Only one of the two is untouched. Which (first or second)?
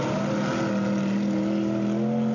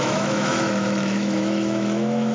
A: first